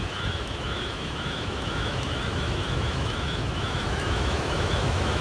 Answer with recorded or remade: remade